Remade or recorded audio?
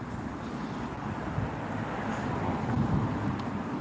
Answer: recorded